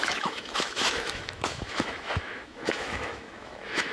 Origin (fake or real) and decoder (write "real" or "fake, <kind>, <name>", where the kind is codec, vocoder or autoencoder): fake, autoencoder, DAC-VAE